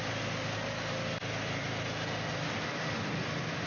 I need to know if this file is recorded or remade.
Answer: recorded